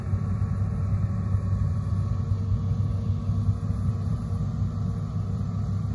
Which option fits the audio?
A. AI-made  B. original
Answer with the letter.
B